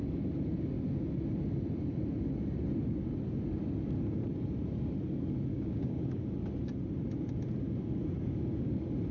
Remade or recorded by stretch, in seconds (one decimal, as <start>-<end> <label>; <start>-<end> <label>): 0.0-5.5 recorded; 5.5-6.2 remade; 6.2-9.1 recorded